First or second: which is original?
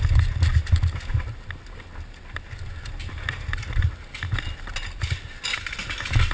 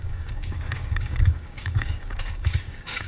first